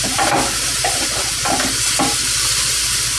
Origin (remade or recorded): recorded